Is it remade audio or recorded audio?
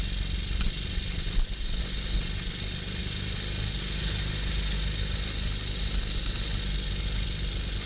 recorded